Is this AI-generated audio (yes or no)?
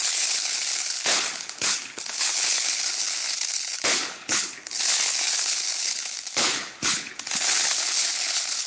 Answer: yes